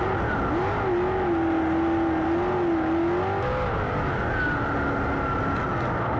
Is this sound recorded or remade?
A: recorded